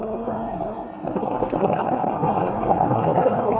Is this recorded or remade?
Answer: remade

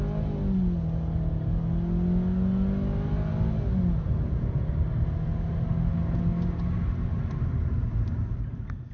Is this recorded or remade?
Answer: recorded